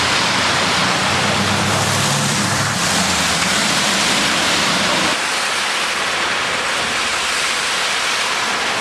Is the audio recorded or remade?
remade